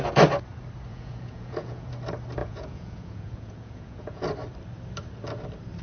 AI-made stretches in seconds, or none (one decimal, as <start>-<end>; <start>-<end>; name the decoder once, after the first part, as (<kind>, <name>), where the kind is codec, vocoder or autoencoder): 0.9-1.9 (vocoder, Vocos); 2.4-4.2